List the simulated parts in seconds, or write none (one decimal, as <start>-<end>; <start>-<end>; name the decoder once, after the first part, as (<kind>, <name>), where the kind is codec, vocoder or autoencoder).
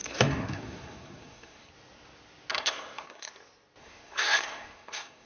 0.0-1.7 (codec, SNAC); 2.5-3.3; 3.8-5.3